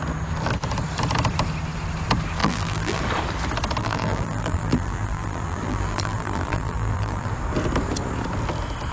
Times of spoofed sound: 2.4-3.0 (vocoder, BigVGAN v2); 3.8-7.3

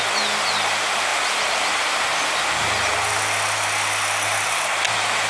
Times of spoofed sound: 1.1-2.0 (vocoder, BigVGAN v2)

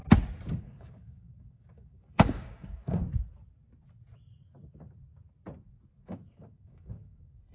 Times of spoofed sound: 0.6-3.0 (codec, DAC); 6.0-7.5